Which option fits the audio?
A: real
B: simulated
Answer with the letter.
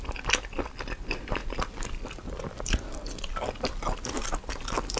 A